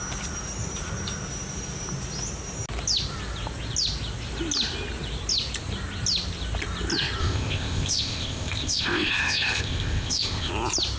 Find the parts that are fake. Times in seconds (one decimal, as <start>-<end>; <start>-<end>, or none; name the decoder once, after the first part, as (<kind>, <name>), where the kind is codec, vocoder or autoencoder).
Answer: 7.2-10.5 (codec, ZipCodec)